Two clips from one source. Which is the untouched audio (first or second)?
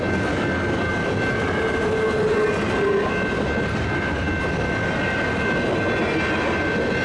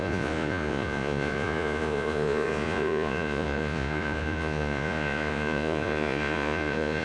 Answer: first